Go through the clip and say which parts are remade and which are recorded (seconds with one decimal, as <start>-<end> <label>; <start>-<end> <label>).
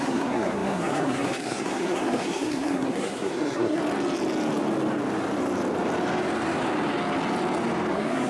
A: 0.0-3.8 remade; 3.8-7.9 recorded; 7.9-8.3 remade